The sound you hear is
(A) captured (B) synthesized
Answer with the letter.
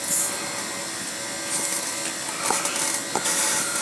B